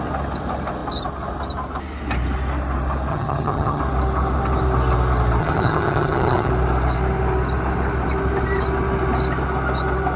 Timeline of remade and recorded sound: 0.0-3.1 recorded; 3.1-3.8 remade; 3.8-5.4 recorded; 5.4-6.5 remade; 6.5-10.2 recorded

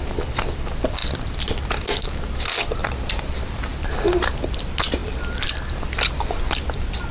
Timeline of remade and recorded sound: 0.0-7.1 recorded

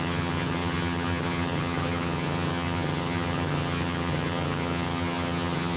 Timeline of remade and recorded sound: 0.0-5.8 remade

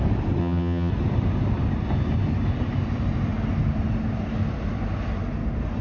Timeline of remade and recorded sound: 0.0-0.4 recorded; 0.4-0.9 remade; 0.9-5.8 recorded